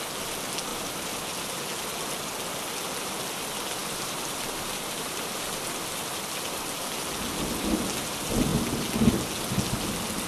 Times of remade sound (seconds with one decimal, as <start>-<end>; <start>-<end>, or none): 0.7-1.2; 3.8-6.9